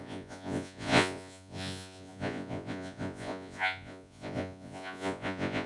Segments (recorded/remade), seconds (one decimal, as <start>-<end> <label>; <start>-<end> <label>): 0.0-5.7 remade